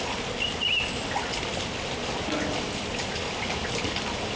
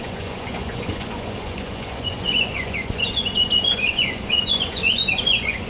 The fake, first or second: second